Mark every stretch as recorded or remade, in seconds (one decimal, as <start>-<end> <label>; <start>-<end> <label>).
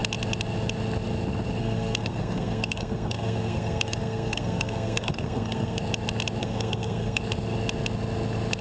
0.0-1.6 recorded; 1.6-5.8 remade; 5.8-6.4 recorded; 6.4-7.2 remade; 7.2-8.6 recorded